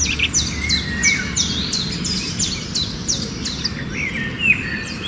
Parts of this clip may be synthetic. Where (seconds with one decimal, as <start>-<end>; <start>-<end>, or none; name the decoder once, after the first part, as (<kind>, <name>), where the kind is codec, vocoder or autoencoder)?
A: 1.0-4.1 (vocoder, BigVGAN v2)